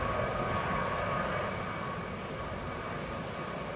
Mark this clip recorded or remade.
recorded